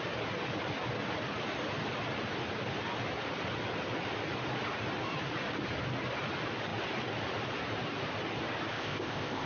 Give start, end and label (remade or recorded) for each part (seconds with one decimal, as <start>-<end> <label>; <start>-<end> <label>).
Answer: 0.0-8.7 recorded; 8.7-9.5 remade